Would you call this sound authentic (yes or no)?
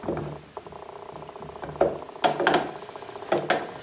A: yes